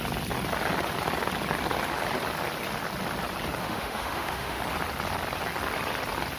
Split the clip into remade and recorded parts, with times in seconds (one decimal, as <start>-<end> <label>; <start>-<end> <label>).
0.0-3.6 recorded; 3.6-4.6 remade; 4.6-6.4 recorded